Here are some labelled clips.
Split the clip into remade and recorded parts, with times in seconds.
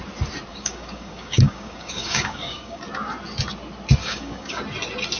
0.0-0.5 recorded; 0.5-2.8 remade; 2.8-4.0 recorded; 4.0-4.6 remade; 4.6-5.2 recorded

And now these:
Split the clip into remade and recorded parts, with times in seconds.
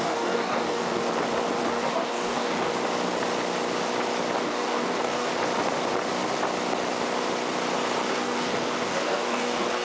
0.0-1.0 remade; 1.0-1.7 recorded; 1.7-2.7 remade; 2.7-4.4 recorded; 4.4-5.3 remade; 5.3-8.1 recorded; 8.1-9.8 remade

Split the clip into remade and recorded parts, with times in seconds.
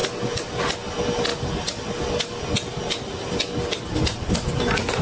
0.0-5.0 recorded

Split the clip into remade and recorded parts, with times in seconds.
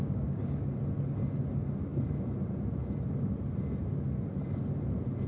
0.0-0.7 remade; 0.7-5.3 recorded